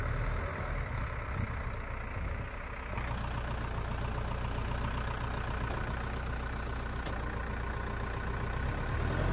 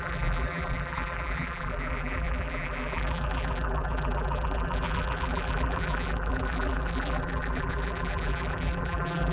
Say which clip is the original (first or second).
first